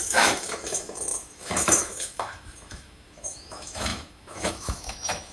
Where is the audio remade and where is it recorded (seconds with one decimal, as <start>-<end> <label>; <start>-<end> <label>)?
0.0-5.3 remade